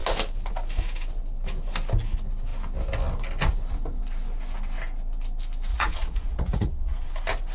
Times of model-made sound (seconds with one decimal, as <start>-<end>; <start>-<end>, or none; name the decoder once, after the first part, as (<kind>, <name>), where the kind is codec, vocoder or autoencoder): 5.7-7.1 (vocoder, Vocos)